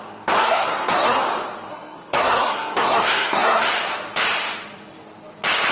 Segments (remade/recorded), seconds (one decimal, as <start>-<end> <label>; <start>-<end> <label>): 0.0-0.4 recorded; 0.4-1.2 remade; 1.2-1.7 recorded; 1.7-3.7 remade; 3.7-5.7 recorded